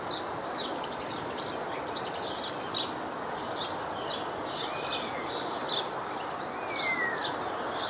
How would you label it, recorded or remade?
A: recorded